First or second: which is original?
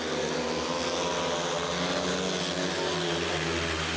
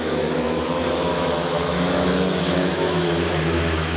first